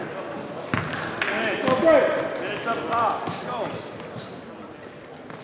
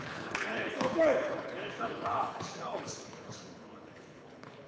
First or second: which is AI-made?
second